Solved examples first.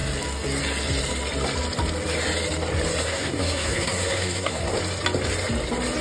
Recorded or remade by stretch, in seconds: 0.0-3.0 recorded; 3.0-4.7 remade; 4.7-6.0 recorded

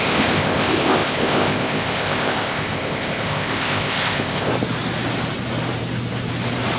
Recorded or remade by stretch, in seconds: 0.0-4.5 remade; 4.5-6.8 recorded

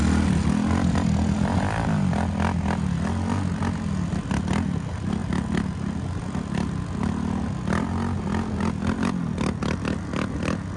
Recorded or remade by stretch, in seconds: 0.0-10.8 recorded

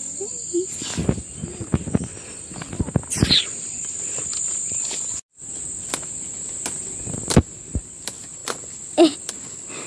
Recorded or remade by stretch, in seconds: 0.0-9.9 recorded